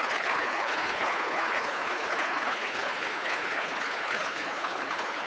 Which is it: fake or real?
fake